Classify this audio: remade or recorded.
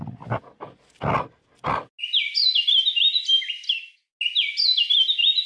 recorded